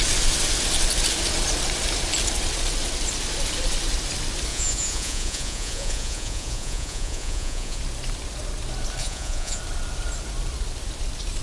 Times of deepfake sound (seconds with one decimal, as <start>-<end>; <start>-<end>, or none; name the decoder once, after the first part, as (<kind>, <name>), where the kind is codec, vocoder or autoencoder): 4.5-7.8 (vocoder, Vocos); 9.0-9.6